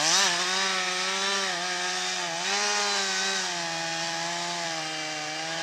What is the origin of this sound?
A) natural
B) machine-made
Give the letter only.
A